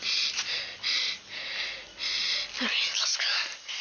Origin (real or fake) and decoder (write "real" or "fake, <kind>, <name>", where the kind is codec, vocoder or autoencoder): real